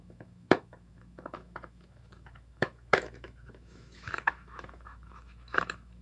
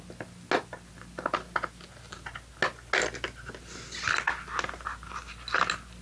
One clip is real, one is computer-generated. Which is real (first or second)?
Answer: second